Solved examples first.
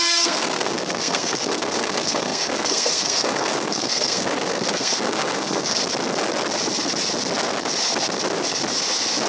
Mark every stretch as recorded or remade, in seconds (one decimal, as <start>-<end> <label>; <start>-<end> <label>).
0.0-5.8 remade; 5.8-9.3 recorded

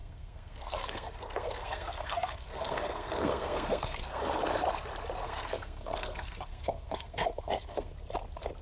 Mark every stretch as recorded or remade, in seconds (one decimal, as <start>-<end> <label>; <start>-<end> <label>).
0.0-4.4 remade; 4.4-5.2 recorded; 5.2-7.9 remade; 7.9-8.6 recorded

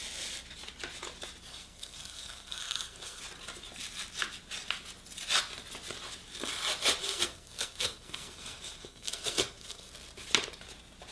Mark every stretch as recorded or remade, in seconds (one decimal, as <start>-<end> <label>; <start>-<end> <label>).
0.0-1.5 recorded; 1.5-3.2 remade; 3.2-7.0 recorded; 7.0-9.9 remade; 9.9-11.1 recorded

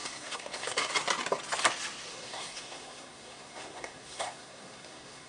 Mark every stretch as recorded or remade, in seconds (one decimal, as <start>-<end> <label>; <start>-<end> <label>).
0.0-0.9 remade; 0.9-2.1 recorded; 2.1-5.3 remade

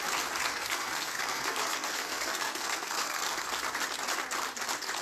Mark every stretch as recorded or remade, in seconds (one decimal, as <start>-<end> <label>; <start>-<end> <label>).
0.0-0.5 recorded; 0.5-3.5 remade; 3.5-5.0 recorded

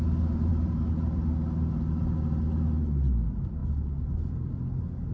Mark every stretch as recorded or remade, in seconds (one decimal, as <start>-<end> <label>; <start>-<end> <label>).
0.0-5.1 recorded

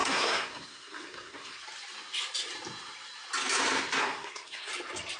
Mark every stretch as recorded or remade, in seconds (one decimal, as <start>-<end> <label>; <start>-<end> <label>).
0.0-1.6 remade; 1.6-4.0 recorded; 4.0-4.7 remade; 4.7-5.2 recorded